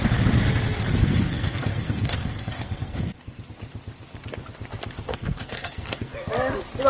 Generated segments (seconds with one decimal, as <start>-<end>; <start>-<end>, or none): 1.0-3.4; 5.1-6.3